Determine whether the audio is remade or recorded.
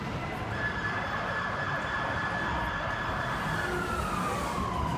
recorded